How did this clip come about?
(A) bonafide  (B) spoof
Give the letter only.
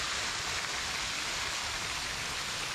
A